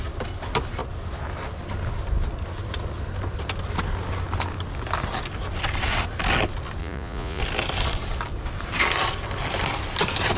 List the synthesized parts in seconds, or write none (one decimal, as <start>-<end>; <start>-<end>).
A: 6.8-7.4